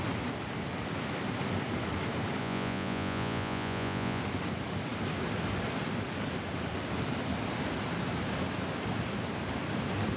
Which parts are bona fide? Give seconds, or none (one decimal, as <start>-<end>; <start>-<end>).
0.0-2.4; 4.2-10.2

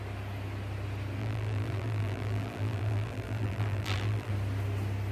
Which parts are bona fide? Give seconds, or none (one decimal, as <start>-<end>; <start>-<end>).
0.0-1.2; 4.3-5.1

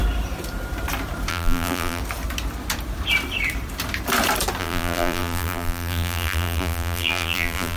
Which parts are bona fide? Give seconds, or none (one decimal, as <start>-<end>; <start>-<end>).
0.0-1.3; 2.0-4.6

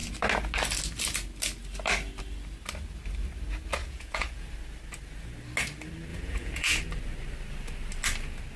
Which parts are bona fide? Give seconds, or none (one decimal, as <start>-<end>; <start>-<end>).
0.0-3.8; 4.5-6.1; 6.8-8.6

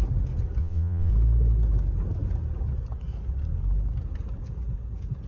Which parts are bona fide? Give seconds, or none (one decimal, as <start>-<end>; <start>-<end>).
0.0-0.6; 1.1-5.3

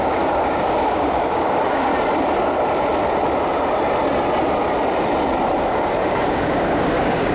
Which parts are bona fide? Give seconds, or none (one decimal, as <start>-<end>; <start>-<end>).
1.9-6.0